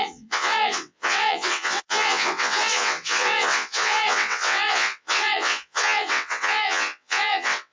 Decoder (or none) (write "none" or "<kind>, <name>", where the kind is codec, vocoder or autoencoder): vocoder, WaveNeXt